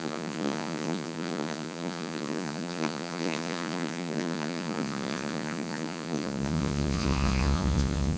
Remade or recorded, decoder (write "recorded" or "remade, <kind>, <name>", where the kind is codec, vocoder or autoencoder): remade, vocoder, Vocos